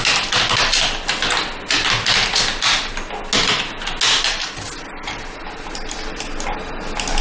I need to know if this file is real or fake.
real